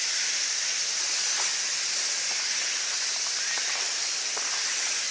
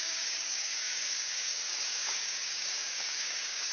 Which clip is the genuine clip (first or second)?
first